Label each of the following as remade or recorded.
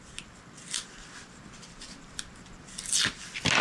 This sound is recorded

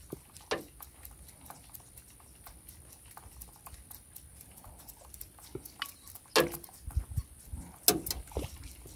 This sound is recorded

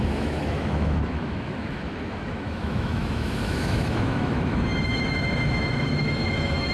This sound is remade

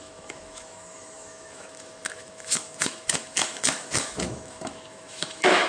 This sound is remade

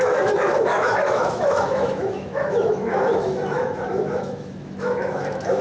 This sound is remade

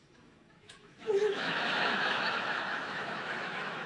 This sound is remade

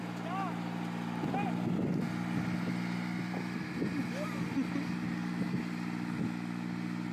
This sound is recorded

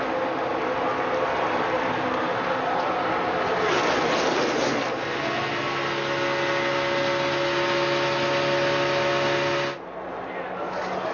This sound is recorded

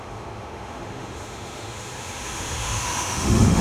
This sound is remade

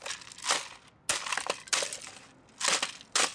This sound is recorded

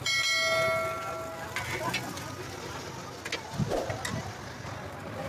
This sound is recorded